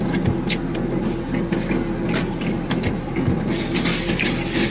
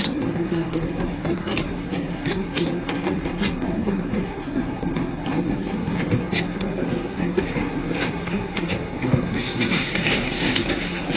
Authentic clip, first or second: first